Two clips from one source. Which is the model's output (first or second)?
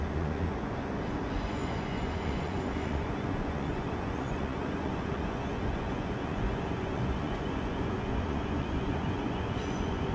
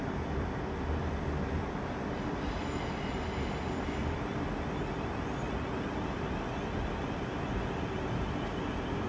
first